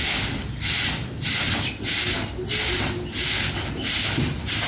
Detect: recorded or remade recorded